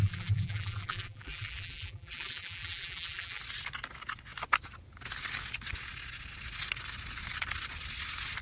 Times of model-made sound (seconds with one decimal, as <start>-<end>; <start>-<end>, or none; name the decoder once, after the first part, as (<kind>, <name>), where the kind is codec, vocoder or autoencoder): 0.0-3.4 (vocoder, BigVGAN v2)